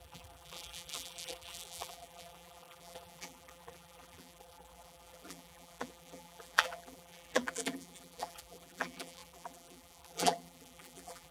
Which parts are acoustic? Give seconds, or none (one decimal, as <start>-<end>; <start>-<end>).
none